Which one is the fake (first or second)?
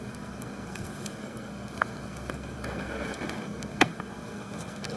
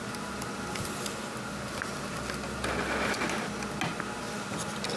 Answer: first